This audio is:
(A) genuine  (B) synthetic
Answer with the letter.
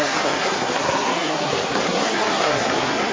B